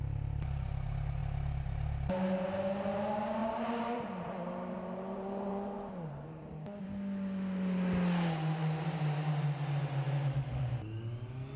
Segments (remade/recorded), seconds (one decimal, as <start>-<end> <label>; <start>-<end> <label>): 0.0-3.4 recorded; 3.4-6.5 remade; 6.5-11.6 recorded